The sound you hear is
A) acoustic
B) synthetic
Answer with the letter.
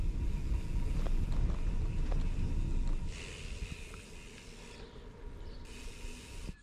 A